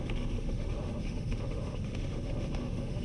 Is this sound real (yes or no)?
no